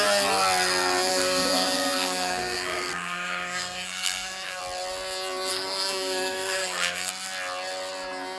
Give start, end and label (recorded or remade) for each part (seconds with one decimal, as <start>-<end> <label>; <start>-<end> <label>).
0.0-1.1 recorded; 1.1-4.6 remade; 4.6-5.5 recorded; 5.5-7.1 remade; 7.1-8.4 recorded